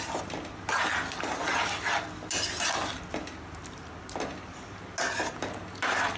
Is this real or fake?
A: real